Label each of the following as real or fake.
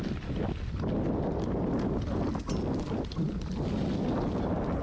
real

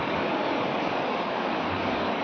fake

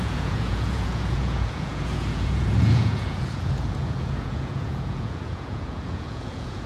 fake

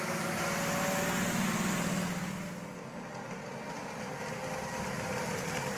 real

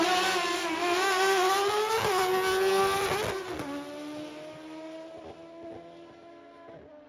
real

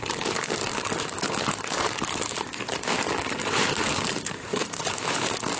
fake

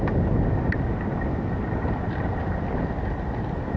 real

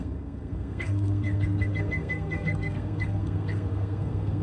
fake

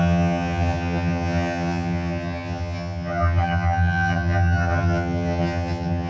fake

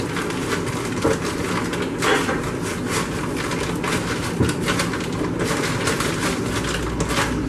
real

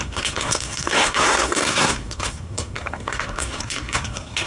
fake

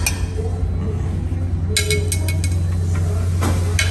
real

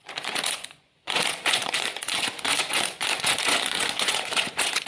fake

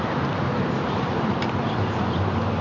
fake